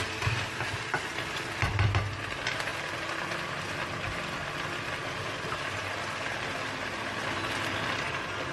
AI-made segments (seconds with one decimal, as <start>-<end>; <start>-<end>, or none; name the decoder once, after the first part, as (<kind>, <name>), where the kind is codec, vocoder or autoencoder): 2.7-7.1 (vocoder, BigVGAN v2)

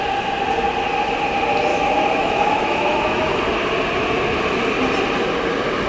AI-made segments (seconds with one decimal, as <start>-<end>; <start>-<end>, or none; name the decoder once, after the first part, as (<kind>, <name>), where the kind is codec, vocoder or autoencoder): 1.7-3.4 (autoencoder, DAC-VAE)

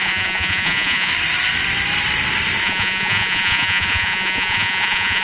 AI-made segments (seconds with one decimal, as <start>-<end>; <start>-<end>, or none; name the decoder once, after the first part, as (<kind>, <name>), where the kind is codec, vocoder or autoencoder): 0.0-1.1 (vocoder, Vocos); 2.6-5.2